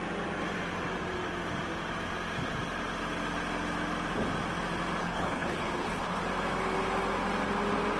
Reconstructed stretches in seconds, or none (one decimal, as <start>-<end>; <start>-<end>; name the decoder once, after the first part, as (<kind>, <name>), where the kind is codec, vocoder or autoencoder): 5.0-6.2 (codec, HILCodec)